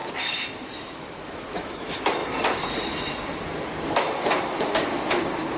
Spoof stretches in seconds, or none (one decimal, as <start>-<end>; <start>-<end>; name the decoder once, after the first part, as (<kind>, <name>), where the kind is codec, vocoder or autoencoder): 0.6-2.2 (autoencoder, DAC-VAE)